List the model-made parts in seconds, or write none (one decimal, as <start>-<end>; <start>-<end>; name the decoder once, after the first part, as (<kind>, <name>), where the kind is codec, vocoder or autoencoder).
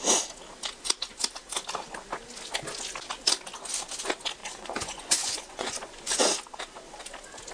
4.4-6.1 (vocoder, Vocos)